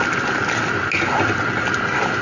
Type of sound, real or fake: real